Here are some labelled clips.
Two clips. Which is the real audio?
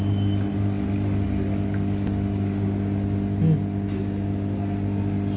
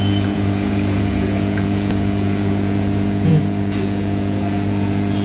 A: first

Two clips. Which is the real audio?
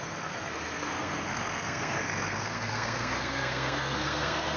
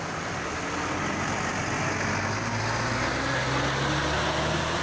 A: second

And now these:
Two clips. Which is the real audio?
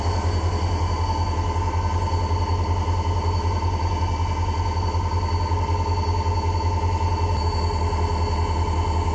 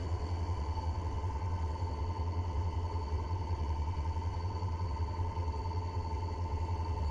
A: first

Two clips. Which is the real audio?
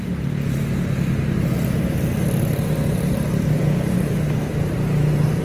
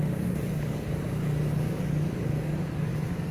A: first